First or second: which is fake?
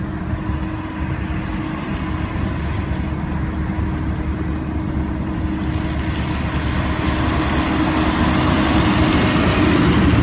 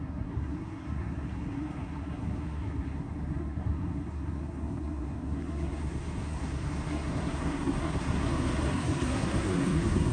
second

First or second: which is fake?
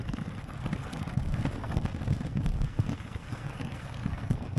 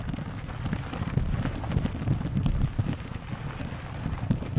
first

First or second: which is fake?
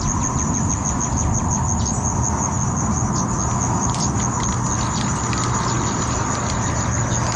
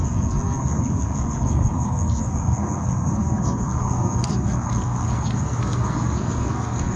second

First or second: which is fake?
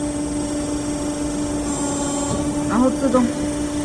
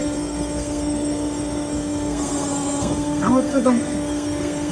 second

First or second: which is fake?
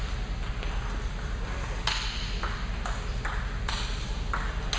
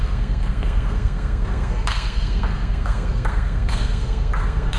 second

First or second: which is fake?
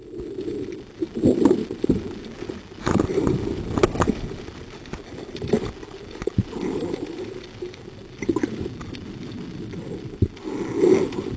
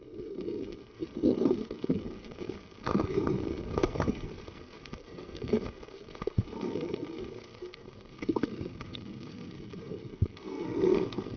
second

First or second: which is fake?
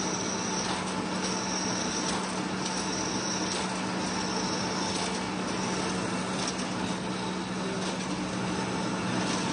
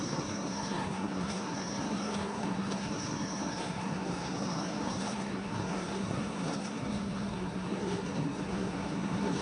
second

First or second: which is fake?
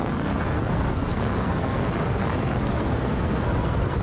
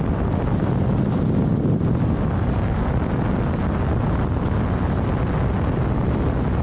first